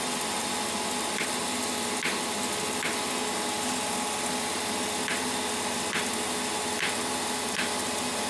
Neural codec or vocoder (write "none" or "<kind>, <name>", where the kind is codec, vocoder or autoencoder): none